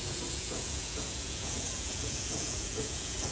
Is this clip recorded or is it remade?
remade